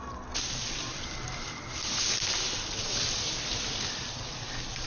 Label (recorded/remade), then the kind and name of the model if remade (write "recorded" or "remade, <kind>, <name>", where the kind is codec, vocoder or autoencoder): recorded